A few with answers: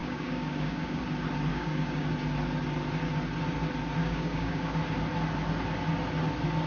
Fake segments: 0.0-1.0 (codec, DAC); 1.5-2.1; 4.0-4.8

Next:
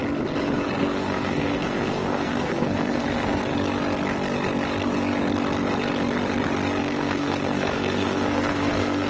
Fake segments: 0.8-3.5 (codec, SNAC); 6.8-9.1

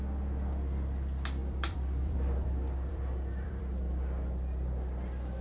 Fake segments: 1.4-3.6 (vocoder, BigVGAN v2)

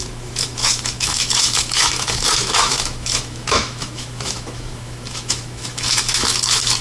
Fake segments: 0.0-6.8 (autoencoder, DAC-VAE)

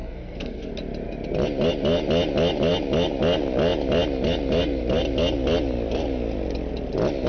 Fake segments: 0.0-0.7 (codec, SNAC)